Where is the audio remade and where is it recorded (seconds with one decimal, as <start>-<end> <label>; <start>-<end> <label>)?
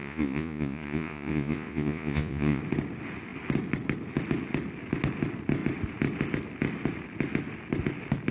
0.0-2.6 remade; 2.6-8.3 recorded